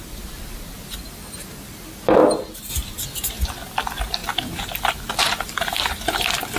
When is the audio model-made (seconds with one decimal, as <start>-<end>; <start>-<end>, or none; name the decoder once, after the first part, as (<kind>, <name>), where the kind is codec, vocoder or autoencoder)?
none